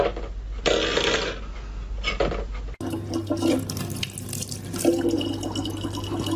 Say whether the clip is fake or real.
real